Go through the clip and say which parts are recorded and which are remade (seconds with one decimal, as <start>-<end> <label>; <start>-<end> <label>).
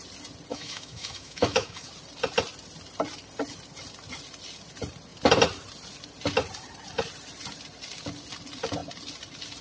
0.0-0.5 recorded; 0.5-1.9 remade; 1.9-9.6 recorded